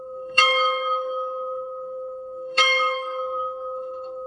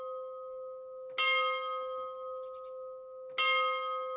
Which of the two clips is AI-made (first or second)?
first